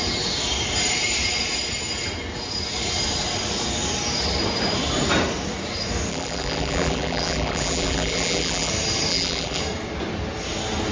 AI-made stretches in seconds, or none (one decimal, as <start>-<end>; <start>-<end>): 6.1-8.7; 9.1-9.6